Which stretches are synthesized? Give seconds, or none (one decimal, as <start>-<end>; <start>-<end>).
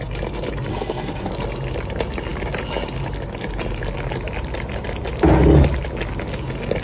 0.7-1.3